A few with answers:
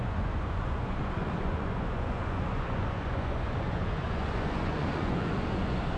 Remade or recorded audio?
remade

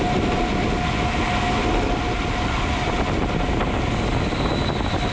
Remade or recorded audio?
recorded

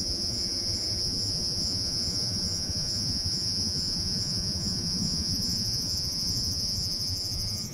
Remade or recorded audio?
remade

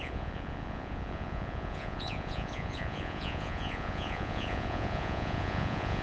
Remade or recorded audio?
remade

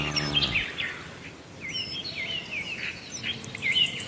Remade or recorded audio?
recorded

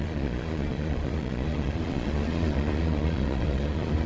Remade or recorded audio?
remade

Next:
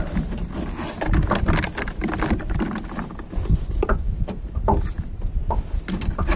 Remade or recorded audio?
recorded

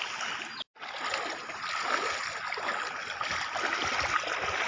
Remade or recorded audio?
recorded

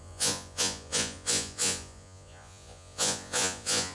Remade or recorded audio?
remade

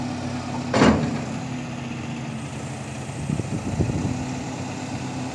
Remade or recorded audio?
recorded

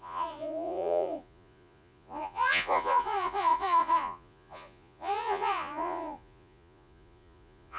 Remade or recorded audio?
remade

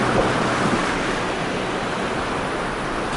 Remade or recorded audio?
recorded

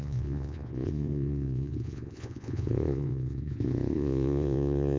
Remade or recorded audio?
remade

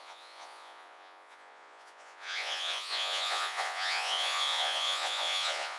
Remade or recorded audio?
remade